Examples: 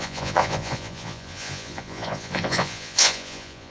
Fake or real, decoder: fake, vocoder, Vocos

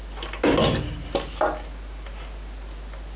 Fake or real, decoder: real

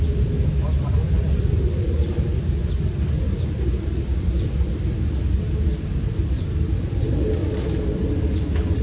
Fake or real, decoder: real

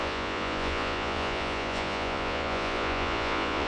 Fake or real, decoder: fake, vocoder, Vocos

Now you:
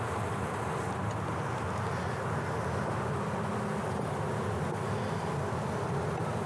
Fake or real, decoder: real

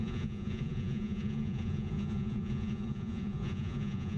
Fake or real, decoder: fake, vocoder, Vocos